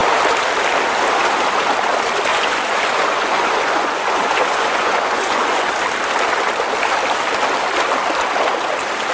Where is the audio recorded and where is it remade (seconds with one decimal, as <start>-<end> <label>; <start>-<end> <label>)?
0.0-2.3 recorded; 2.3-5.7 remade; 5.7-9.1 recorded